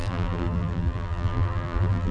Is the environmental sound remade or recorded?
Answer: remade